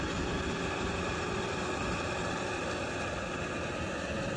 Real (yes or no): yes